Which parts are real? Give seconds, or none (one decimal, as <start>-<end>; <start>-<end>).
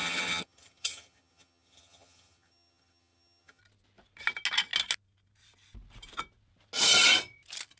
3.6-7.8